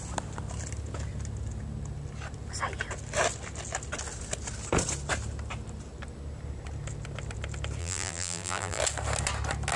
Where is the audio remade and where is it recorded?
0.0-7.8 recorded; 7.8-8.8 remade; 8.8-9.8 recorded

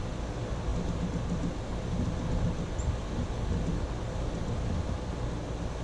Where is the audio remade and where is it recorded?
0.0-5.8 recorded